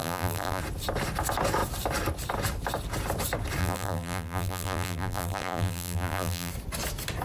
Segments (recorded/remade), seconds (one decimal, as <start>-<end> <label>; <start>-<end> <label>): 0.0-0.6 remade; 0.6-3.6 recorded; 3.6-6.5 remade; 6.5-7.2 recorded